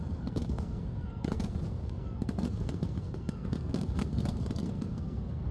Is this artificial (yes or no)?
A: yes